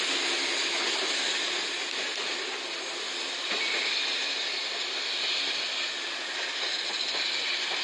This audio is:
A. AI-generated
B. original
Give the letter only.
B